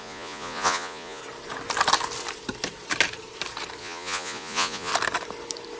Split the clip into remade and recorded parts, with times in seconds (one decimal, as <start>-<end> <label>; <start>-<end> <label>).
0.0-1.2 remade; 1.2-3.8 recorded; 3.8-4.9 remade; 4.9-5.8 recorded